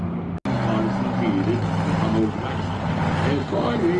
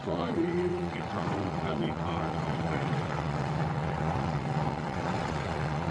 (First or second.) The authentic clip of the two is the first